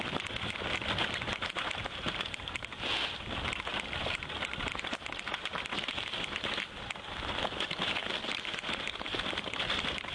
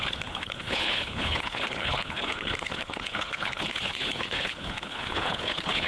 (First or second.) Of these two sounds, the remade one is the second